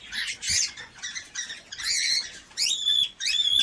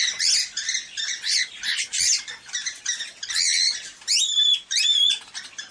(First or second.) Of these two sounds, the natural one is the second